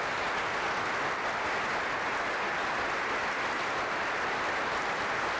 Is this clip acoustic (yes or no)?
yes